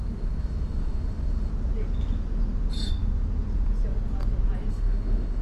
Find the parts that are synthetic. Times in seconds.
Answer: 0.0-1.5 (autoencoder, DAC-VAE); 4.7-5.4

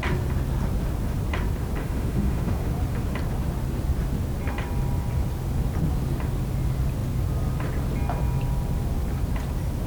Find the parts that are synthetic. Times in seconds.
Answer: 1.8-2.7 (autoencoder, DAC-VAE)

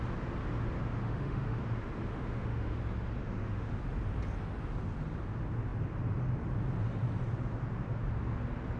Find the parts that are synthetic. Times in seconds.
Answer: 1.0-1.6 (autoencoder, DAC-VAE); 2.1-2.8; 3.2-3.8

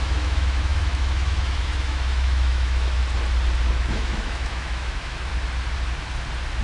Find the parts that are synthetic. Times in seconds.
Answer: 0.0-3.0 (autoencoder, DAC-VAE); 3.7-5.3